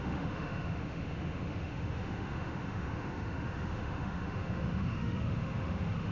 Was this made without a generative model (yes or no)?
no